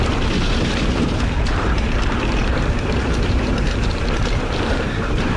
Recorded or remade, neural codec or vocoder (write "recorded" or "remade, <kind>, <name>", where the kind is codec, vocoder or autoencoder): remade, vocoder, BigVGAN v2